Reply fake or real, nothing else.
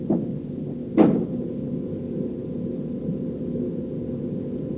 real